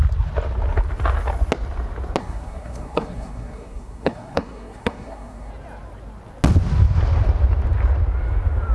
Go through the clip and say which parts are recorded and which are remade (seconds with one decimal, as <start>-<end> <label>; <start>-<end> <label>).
0.0-2.2 recorded; 2.2-5.5 remade; 5.5-8.7 recorded